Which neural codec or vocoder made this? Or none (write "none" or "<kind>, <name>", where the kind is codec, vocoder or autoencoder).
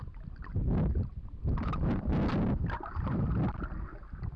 none